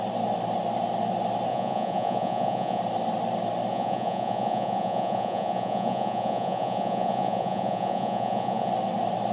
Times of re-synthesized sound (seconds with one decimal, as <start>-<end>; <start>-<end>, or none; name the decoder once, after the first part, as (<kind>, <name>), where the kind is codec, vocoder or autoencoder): 1.5-2.8 (vocoder, Vocos); 3.7-8.7